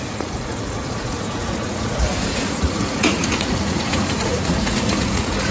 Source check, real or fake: fake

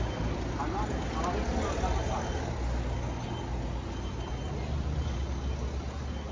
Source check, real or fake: real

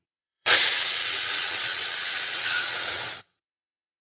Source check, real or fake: fake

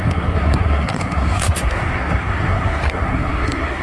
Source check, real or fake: fake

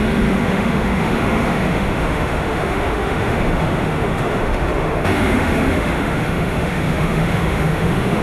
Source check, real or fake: fake